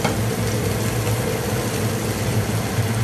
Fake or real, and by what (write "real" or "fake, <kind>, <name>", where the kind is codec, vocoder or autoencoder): real